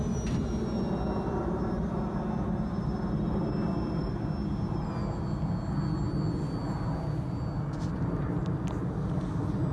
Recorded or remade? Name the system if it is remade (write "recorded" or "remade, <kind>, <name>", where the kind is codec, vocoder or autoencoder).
recorded